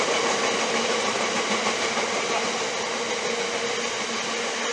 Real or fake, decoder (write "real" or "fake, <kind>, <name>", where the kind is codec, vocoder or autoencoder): real